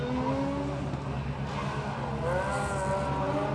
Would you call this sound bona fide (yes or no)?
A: yes